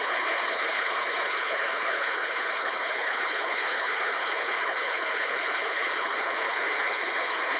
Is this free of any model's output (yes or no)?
no